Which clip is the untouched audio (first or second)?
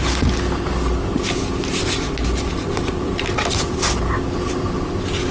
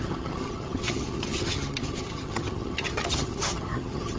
first